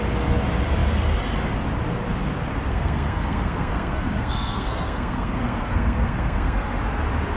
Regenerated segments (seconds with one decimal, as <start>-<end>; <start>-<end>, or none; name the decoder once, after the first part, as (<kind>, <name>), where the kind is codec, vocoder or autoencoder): 2.7-6.8 (codec, SNAC)